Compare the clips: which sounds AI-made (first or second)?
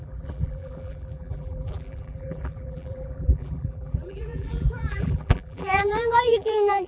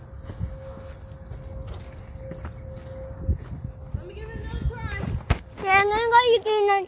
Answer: first